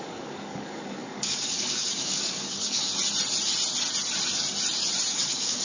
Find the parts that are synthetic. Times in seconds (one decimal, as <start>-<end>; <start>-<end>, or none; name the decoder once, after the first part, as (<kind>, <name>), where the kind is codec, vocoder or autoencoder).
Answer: 0.0-2.9 (codec, DAC); 5.1-5.6